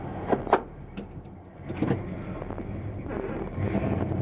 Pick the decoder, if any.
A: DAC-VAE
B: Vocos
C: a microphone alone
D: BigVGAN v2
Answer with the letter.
C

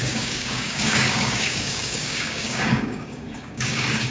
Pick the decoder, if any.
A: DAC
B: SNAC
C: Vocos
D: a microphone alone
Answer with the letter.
A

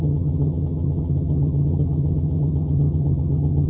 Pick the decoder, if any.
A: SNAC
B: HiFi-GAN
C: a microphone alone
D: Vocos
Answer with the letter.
B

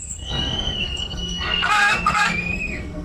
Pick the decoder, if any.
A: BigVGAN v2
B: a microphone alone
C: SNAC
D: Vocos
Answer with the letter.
C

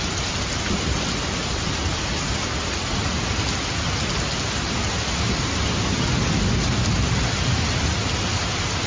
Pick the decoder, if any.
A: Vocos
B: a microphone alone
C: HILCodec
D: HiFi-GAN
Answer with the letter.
B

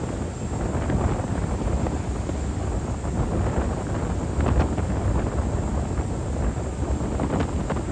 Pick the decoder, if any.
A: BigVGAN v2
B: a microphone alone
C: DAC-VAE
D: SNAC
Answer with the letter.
B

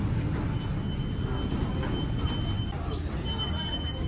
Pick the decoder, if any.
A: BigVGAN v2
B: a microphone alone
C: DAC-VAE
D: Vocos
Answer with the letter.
B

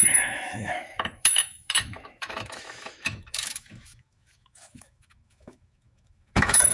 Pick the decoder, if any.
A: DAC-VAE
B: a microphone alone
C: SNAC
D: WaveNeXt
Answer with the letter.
A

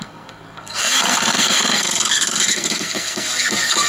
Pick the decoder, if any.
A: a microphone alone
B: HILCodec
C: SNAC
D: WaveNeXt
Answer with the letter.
C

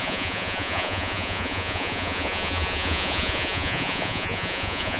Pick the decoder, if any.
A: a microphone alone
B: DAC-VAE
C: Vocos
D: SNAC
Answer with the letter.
C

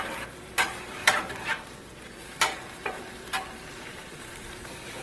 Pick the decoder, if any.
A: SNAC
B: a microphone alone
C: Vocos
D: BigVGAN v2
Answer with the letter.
D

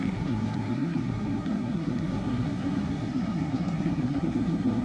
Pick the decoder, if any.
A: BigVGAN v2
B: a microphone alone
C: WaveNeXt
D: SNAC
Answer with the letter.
D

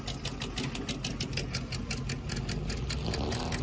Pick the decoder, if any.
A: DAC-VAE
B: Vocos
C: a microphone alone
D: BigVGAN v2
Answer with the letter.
C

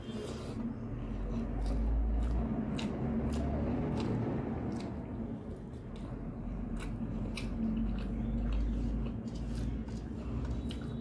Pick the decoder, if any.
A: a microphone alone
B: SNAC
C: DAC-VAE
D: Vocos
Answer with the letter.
A